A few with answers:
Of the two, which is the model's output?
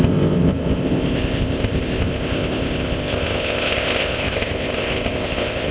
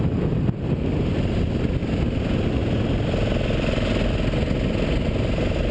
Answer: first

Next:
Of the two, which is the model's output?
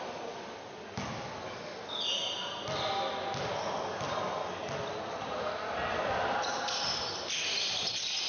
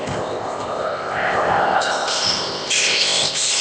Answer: second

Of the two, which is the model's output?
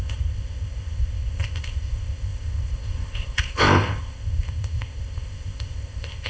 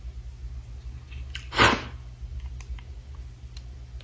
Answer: first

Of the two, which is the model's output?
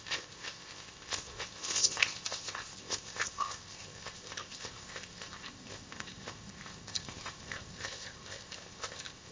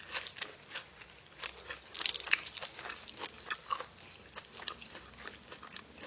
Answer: first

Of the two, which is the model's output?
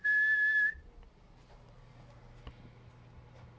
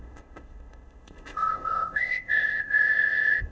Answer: second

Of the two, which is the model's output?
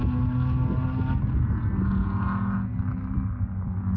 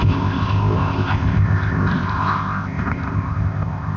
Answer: second